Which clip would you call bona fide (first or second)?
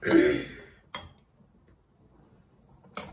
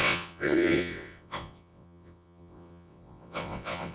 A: first